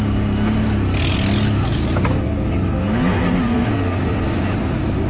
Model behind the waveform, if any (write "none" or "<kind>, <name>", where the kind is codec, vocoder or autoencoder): none